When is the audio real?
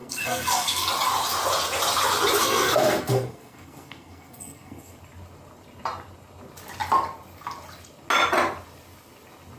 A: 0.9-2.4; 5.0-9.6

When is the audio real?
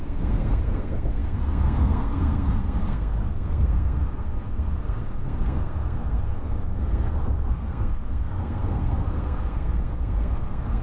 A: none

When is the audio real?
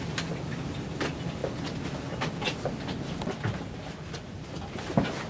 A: 0.0-5.3